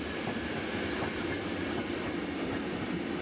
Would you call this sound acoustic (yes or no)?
yes